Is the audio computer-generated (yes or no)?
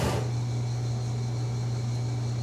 no